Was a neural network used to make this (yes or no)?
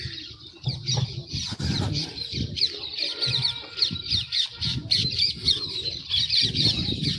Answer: no